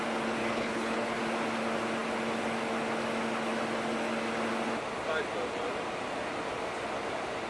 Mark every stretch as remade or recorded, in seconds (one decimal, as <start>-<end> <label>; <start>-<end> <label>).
0.0-0.4 recorded; 0.4-1.2 remade; 1.2-7.5 recorded

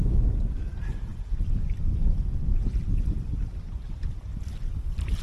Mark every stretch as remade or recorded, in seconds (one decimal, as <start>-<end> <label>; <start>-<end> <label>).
0.0-5.2 recorded

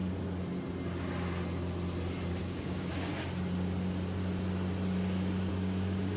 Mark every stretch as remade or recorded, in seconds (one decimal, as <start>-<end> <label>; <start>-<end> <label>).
0.0-2.4 recorded; 2.4-3.1 remade; 3.1-5.5 recorded; 5.5-6.2 remade

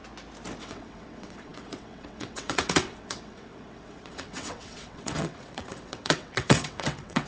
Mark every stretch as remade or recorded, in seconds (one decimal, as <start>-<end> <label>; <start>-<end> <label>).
0.0-0.6 recorded; 0.6-7.3 remade

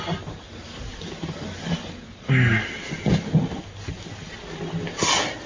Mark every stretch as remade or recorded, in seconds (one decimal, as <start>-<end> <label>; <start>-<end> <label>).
0.0-5.5 recorded

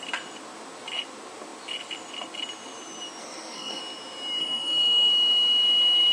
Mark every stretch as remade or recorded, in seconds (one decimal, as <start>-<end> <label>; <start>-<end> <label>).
0.0-3.2 recorded; 3.2-3.8 remade; 3.8-4.4 recorded; 4.4-5.1 remade; 5.1-6.1 recorded